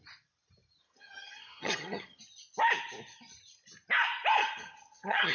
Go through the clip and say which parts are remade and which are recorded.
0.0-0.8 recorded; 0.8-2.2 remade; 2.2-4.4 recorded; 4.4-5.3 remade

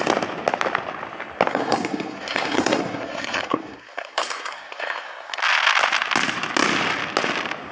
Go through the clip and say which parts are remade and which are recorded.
0.0-1.5 recorded; 1.5-5.4 remade; 5.4-7.7 recorded